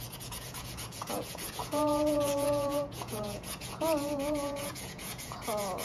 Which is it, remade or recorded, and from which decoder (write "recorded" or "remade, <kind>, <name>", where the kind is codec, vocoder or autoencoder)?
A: remade, vocoder, Vocos